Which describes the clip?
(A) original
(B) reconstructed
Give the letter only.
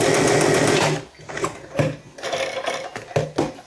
A